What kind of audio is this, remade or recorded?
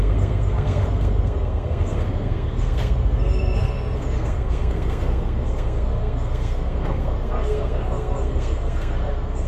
remade